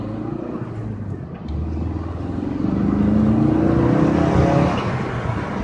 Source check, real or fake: real